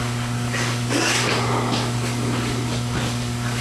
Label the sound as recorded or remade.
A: remade